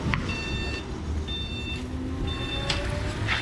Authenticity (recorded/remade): recorded